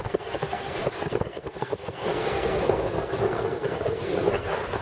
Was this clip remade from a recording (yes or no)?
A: yes